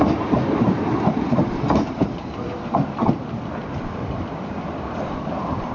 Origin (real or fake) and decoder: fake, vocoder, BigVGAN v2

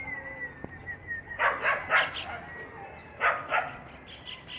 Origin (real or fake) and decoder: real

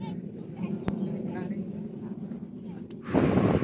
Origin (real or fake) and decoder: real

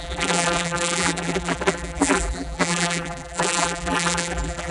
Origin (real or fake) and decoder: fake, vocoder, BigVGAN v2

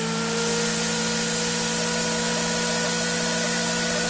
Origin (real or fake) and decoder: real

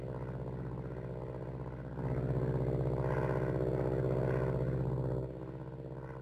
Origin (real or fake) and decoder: real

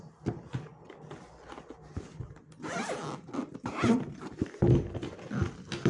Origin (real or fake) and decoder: fake, vocoder, BigVGAN v2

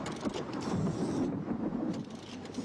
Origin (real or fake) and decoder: fake, vocoder, BigVGAN v2